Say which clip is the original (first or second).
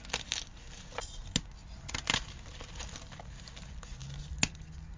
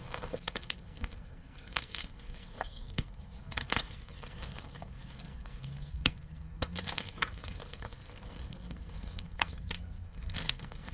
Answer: first